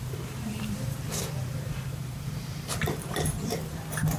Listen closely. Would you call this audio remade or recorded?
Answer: remade